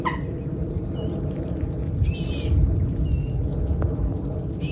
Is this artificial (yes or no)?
no